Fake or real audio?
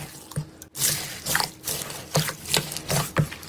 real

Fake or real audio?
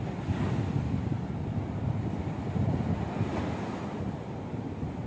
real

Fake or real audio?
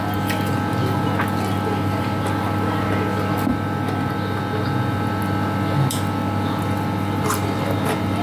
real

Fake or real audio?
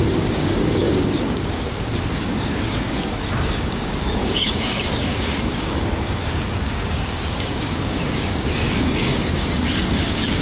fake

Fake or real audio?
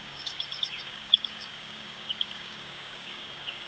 fake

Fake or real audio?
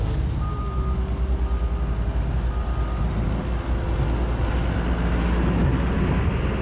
real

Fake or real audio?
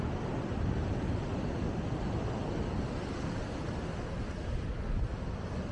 real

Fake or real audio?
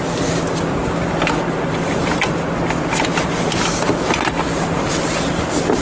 real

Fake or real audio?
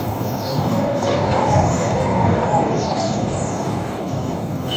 fake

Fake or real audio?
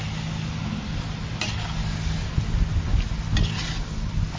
real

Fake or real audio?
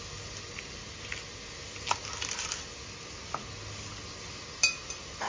real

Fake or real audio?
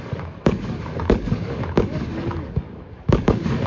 fake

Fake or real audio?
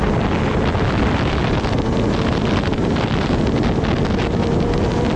real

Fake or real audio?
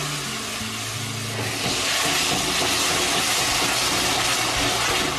real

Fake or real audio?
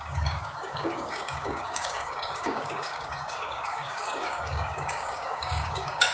fake